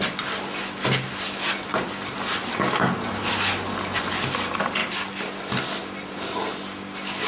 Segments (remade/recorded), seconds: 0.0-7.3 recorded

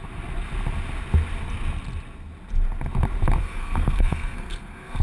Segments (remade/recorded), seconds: 0.0-3.4 recorded; 3.4-5.0 remade